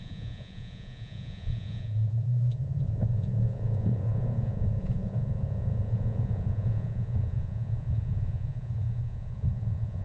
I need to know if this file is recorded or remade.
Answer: remade